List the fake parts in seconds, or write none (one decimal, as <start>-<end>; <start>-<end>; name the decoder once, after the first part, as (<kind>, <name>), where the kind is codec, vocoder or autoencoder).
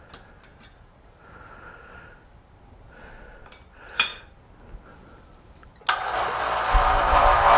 none